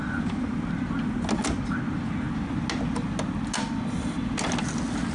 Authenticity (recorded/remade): recorded